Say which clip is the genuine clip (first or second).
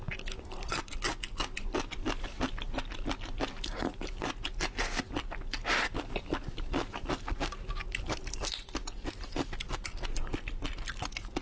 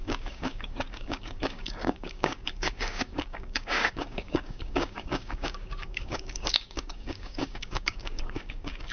first